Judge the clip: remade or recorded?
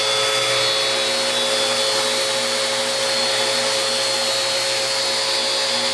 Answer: recorded